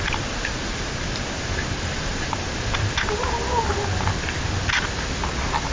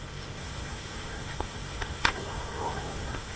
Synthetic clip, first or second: second